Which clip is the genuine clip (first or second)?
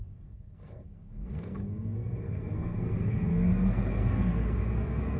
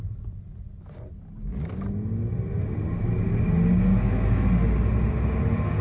second